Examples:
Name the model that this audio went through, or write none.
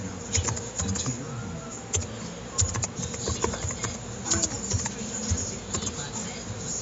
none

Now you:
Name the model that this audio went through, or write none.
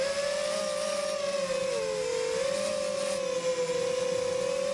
none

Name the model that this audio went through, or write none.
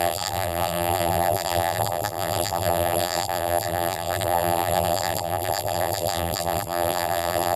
vocoder, BigVGAN v2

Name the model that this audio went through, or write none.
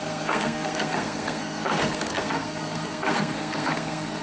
codec, SNAC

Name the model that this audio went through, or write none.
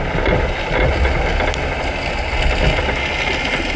none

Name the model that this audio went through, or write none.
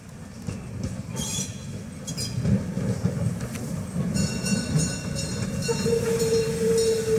none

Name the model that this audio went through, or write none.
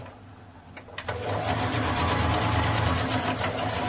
none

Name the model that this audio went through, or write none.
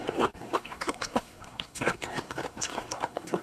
codec, SNAC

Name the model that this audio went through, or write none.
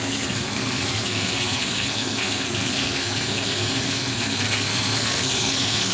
codec, SNAC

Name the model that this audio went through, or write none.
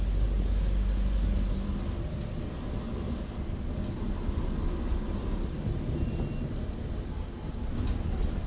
none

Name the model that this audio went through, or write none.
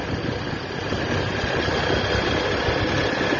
none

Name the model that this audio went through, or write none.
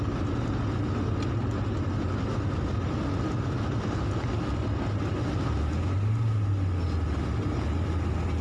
none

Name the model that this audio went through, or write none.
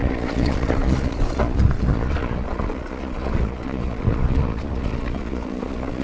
vocoder, Vocos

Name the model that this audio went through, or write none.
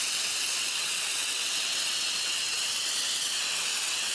vocoder, WaveNeXt